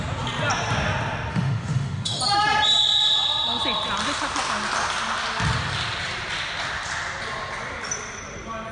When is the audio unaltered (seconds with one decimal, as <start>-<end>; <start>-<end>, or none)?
0.0-1.3; 2.2-8.7